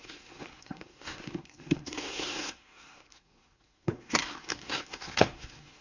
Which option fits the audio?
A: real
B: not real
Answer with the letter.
B